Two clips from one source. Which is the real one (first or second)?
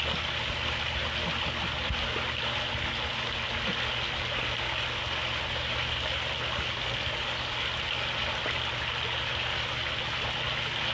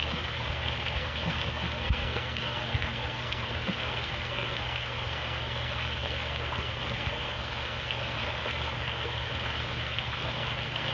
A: first